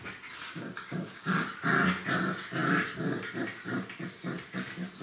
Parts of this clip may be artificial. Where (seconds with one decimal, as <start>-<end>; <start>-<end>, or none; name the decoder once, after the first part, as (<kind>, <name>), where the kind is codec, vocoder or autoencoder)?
0.4-1.4 (codec, DAC)